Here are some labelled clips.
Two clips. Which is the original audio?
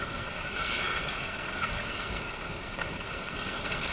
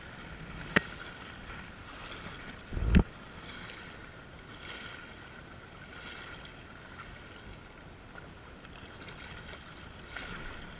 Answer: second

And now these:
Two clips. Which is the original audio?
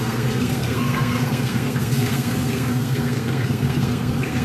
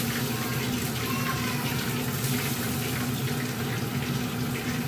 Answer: second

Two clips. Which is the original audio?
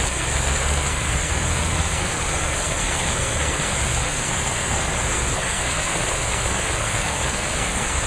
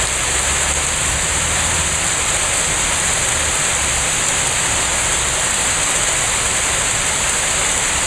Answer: second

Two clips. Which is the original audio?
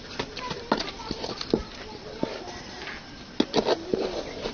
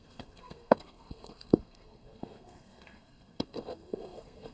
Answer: first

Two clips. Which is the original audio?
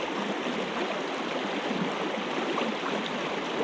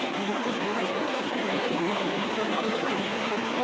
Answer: first